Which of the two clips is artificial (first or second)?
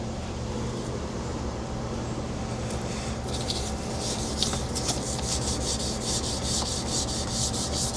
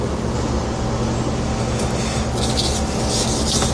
first